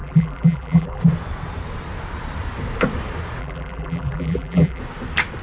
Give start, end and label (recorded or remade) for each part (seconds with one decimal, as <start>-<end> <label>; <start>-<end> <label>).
0.0-1.0 remade; 1.0-3.4 recorded; 3.4-4.8 remade; 4.8-5.4 recorded